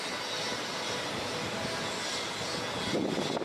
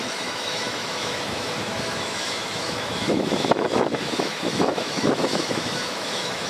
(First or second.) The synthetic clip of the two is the second